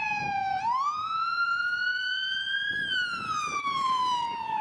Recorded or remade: remade